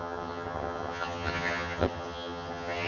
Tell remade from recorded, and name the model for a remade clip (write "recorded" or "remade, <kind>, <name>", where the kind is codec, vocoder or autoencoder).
remade, vocoder, HiFi-GAN